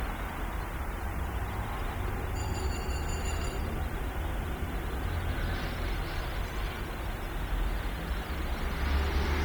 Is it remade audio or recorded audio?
recorded